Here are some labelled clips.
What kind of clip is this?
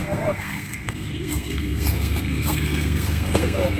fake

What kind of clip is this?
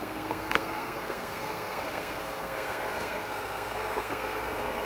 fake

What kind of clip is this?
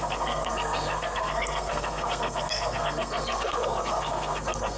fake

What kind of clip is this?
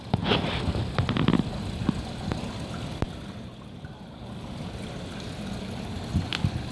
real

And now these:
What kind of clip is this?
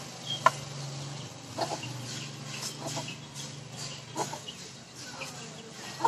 real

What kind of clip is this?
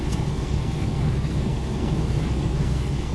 fake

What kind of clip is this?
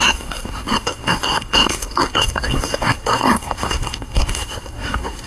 fake